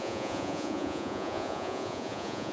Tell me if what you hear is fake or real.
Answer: fake